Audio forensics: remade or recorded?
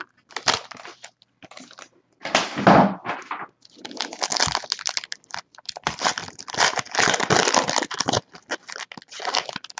recorded